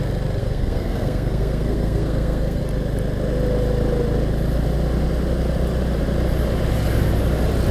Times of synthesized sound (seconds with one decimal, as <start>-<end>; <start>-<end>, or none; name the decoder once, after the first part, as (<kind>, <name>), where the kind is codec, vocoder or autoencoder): 0.4-2.6 (codec, SNAC)